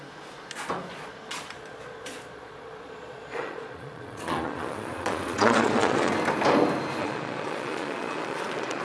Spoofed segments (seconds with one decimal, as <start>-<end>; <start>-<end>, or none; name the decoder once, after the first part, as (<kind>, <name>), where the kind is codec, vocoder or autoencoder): 0.9-6.1 (vocoder, Vocos); 7.0-8.8